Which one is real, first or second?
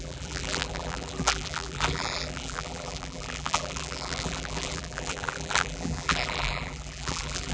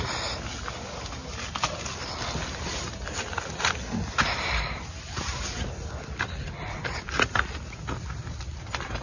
second